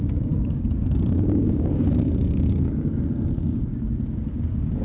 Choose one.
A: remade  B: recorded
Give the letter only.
A